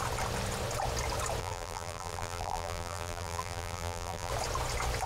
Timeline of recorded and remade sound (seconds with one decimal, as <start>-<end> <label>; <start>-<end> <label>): 0.0-1.4 recorded; 1.4-4.3 remade; 4.3-5.1 recorded